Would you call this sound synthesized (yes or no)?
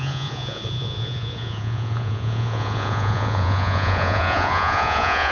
yes